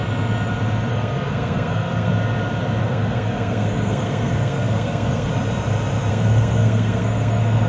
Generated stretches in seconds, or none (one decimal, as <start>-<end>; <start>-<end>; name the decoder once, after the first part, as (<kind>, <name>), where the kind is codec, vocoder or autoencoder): 0.9-2.1 (codec, SNAC); 2.8-5.3; 6.1-7.7